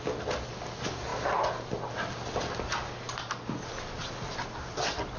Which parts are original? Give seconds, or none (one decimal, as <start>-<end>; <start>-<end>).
0.0-5.2